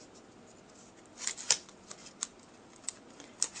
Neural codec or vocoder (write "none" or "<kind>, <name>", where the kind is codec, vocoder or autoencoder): none